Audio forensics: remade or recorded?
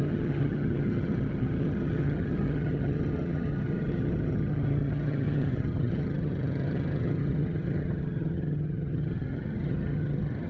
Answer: remade